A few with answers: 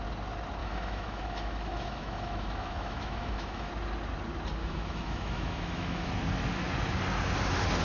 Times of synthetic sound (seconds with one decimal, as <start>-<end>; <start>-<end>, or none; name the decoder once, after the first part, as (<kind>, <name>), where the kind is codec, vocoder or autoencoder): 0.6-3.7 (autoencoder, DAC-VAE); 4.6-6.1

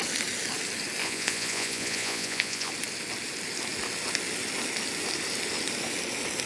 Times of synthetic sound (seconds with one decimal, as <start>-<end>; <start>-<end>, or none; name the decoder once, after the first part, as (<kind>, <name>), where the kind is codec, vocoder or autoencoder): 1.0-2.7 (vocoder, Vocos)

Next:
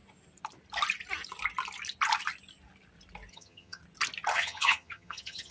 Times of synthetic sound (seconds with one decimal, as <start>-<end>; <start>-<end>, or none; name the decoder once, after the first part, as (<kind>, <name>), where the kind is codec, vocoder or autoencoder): 3.3-3.8 (vocoder, HiFi-GAN); 4.3-5.5

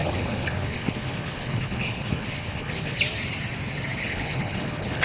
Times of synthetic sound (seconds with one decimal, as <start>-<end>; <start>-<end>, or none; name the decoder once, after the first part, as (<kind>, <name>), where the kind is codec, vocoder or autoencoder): 0.0-3.0 (codec, HILCodec); 4.0-5.0

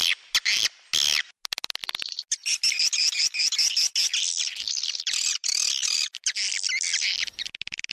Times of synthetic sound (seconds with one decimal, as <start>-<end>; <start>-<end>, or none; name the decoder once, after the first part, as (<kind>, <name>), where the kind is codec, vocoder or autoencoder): none

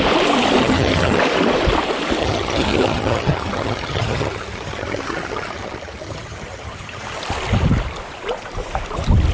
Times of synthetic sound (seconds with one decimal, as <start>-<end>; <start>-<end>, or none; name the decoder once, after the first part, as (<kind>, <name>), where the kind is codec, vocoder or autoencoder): 0.6-1.2 (vocoder, HiFi-GAN); 2.2-7.2